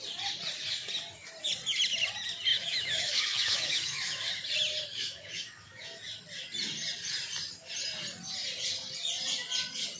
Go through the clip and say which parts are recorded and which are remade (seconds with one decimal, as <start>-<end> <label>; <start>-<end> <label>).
0.0-2.5 recorded; 2.5-4.3 remade; 4.3-4.9 recorded; 4.9-6.0 remade; 6.0-10.0 recorded